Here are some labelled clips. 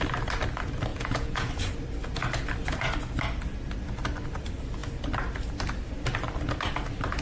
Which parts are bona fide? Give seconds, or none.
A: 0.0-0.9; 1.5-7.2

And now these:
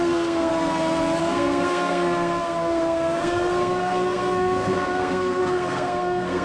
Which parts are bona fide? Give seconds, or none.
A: 0.5-1.2

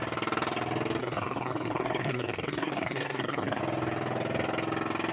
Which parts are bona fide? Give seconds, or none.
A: 0.0-1.0; 3.6-5.1

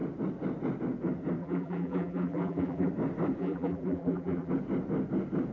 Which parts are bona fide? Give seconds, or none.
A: 0.0-1.4; 2.9-3.4; 4.5-5.5

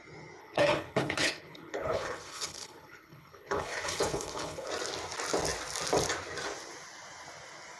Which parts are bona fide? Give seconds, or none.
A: 0.0-0.4; 4.7-7.8

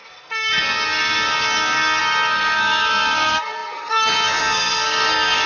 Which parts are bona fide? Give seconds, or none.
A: none

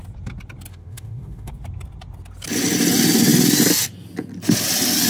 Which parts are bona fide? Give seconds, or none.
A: 0.0-0.7; 1.5-5.1